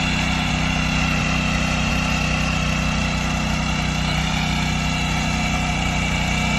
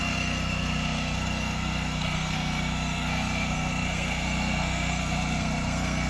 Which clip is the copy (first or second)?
second